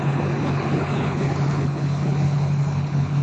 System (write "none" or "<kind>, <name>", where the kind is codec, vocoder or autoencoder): codec, HILCodec